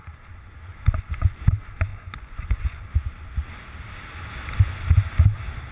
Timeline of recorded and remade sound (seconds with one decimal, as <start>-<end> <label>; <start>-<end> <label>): 0.0-0.7 recorded; 0.7-1.4 remade; 1.4-1.9 recorded; 1.9-2.8 remade; 2.8-5.7 recorded